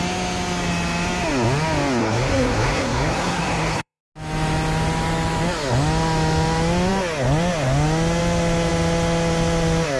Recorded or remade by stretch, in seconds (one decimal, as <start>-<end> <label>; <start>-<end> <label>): 0.0-2.0 recorded; 2.0-4.0 remade; 4.0-10.0 recorded